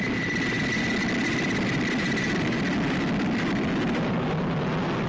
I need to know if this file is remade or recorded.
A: recorded